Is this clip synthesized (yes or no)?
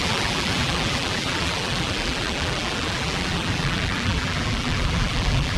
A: yes